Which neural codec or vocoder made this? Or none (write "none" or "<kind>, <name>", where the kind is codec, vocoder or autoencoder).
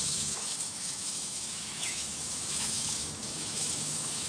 autoencoder, DAC-VAE